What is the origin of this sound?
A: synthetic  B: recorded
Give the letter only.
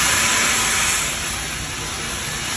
B